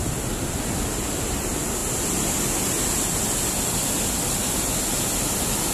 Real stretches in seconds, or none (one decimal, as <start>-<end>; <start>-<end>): 0.0-5.7